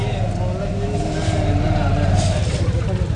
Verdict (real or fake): real